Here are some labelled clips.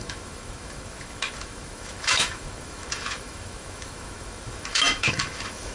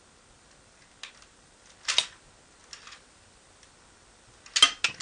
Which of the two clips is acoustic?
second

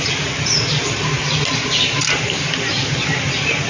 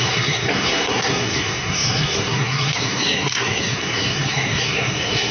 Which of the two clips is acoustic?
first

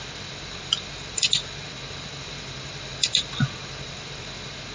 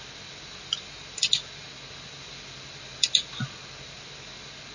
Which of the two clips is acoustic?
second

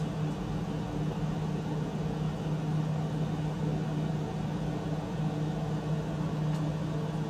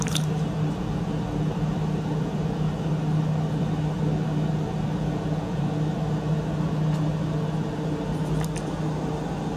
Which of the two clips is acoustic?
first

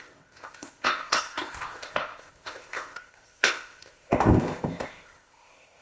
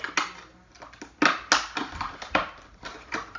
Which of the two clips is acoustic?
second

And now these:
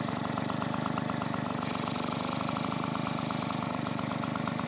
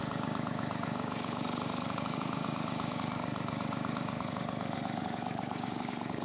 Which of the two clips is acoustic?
first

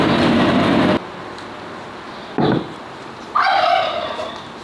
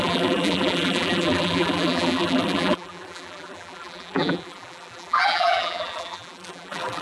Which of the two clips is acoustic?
first